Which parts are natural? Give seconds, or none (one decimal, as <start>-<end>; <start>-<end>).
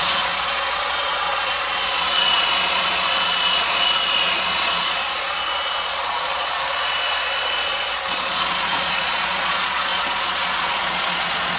none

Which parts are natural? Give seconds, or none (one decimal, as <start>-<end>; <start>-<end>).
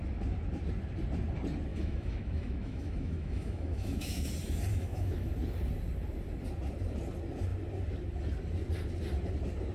0.0-1.7; 4.3-4.7; 5.3-9.7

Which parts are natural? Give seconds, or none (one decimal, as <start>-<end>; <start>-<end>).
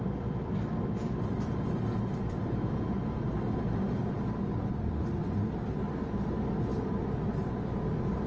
none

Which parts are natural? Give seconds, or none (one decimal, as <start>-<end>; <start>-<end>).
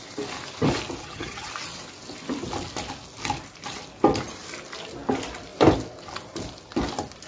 0.0-1.0; 1.5-7.3